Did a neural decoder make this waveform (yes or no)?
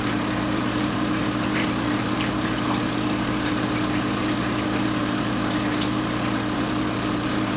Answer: yes